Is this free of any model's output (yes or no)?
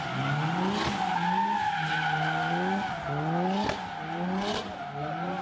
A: yes